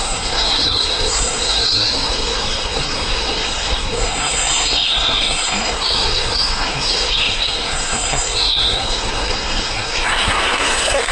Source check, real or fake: fake